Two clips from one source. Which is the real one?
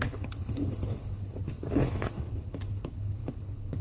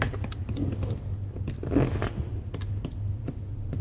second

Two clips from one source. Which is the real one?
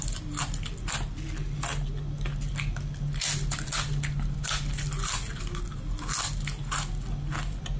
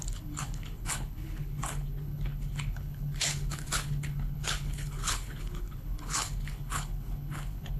first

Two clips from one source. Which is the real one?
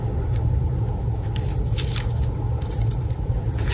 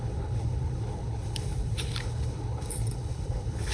first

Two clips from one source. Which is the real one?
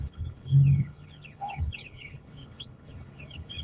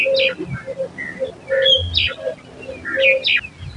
second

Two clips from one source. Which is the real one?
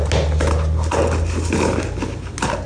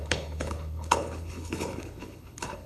first